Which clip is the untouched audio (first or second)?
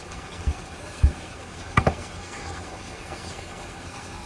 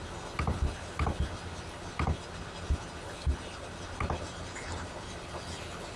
second